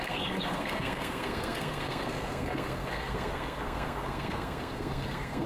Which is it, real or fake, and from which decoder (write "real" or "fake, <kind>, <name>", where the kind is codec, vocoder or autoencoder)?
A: fake, codec, SNAC